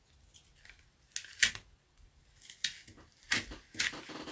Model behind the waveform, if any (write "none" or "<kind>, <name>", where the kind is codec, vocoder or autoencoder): none